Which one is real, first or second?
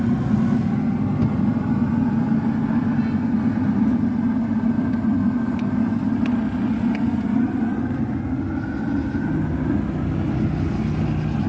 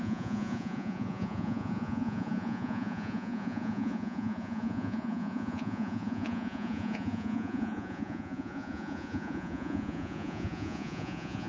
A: first